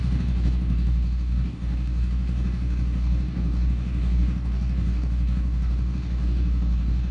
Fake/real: fake